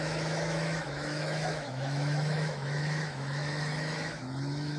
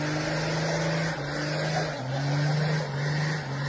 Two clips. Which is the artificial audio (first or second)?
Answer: first